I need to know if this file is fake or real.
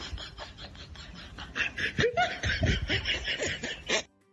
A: real